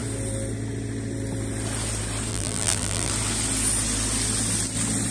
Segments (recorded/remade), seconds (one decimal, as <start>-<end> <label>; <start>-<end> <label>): 0.0-2.3 recorded; 2.3-3.1 remade; 3.1-5.1 recorded